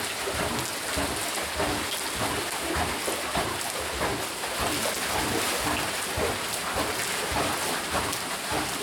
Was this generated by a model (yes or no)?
no